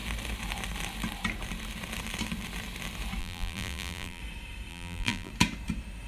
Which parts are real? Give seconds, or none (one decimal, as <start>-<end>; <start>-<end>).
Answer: 0.0-3.2; 4.2-4.7; 5.3-6.1